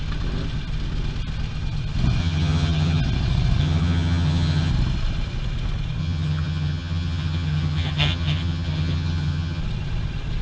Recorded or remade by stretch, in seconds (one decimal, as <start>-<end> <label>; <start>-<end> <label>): 0.0-2.2 recorded; 2.2-3.0 remade; 3.0-3.6 recorded; 3.6-4.7 remade; 4.7-6.0 recorded; 6.0-9.6 remade; 9.6-10.4 recorded